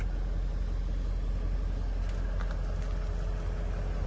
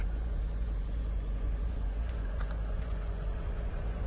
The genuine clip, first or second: first